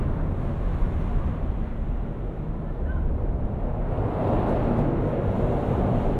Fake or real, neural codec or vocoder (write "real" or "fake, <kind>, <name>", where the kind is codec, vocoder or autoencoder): real